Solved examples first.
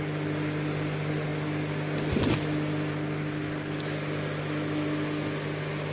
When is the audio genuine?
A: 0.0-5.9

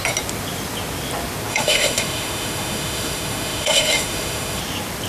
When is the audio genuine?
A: 0.0-1.5; 4.6-5.1